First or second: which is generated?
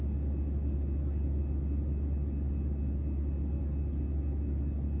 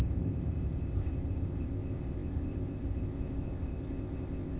second